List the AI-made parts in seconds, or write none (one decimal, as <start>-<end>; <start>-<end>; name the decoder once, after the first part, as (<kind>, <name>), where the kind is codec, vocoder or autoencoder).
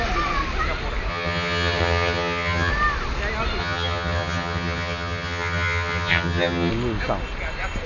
1.1-2.7 (vocoder, HiFi-GAN); 3.6-6.7